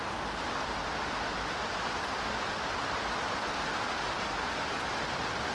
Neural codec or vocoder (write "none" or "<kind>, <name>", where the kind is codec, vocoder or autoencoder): none